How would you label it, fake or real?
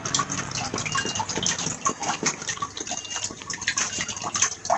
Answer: fake